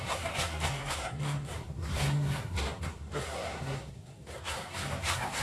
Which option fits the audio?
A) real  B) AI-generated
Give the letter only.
B